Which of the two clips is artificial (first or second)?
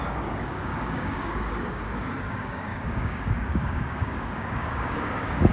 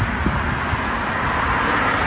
first